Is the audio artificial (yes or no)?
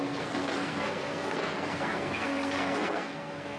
yes